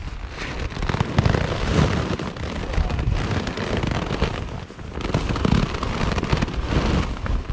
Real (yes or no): yes